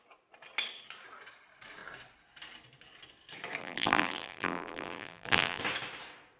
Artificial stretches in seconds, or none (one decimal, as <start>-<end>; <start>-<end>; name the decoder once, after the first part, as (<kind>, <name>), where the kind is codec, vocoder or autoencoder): 3.6-5.6 (vocoder, BigVGAN v2)